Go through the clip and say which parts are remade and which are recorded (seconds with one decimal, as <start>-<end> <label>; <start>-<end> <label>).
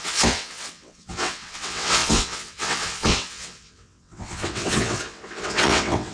0.0-6.1 remade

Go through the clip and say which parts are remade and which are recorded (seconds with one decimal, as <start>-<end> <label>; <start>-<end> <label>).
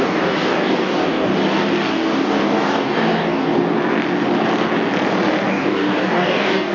0.0-1.3 remade; 1.3-1.9 recorded; 1.9-3.5 remade; 3.5-5.5 recorded; 5.5-6.7 remade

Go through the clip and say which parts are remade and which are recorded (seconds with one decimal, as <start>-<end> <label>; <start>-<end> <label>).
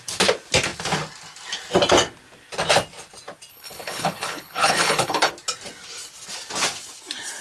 0.0-3.5 recorded; 3.5-5.3 remade; 5.3-7.4 recorded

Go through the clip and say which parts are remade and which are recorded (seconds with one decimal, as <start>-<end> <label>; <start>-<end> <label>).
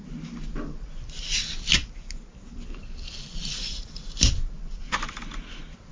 0.0-2.8 recorded; 2.8-4.3 remade; 4.3-5.9 recorded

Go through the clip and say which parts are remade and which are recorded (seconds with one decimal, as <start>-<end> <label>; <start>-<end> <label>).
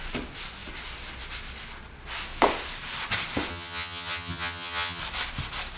0.0-3.5 recorded; 3.5-5.0 remade; 5.0-5.8 recorded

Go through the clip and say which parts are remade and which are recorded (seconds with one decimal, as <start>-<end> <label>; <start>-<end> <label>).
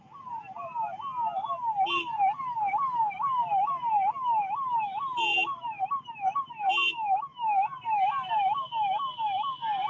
0.0-5.3 recorded; 5.3-6.5 remade; 6.5-7.3 recorded; 7.3-8.3 remade; 8.3-9.9 recorded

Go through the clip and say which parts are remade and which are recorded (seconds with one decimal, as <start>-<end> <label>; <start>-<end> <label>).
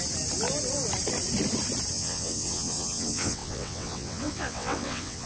0.0-1.9 recorded; 1.9-5.3 remade